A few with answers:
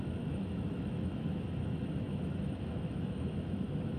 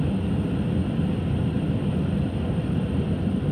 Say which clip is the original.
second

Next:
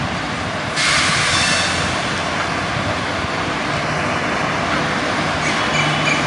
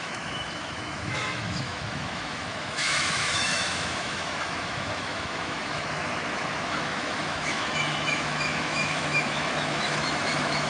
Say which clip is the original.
first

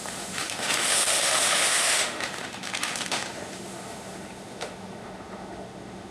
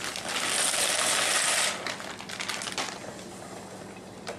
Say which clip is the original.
second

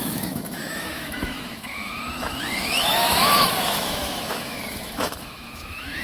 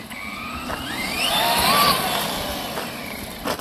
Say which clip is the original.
second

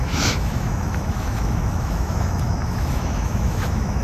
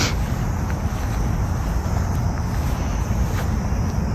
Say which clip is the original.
second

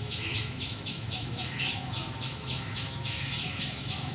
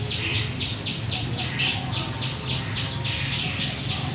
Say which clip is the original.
second